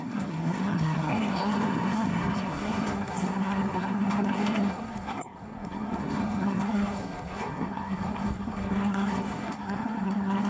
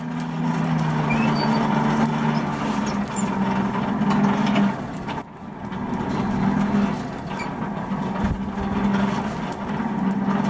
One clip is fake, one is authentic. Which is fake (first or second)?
first